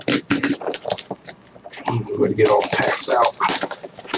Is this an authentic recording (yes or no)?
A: no